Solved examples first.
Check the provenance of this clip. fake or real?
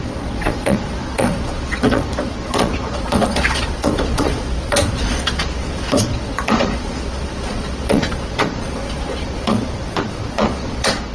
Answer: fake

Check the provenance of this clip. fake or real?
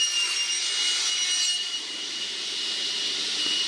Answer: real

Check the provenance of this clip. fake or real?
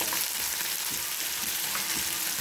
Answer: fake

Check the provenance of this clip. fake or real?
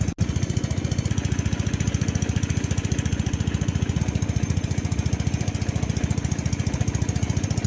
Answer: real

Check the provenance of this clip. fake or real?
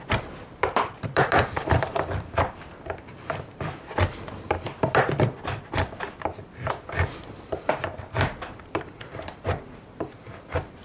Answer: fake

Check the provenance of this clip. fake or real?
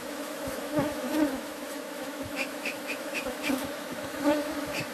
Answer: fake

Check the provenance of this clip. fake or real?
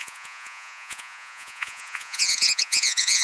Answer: fake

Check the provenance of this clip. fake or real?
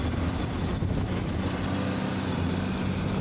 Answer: real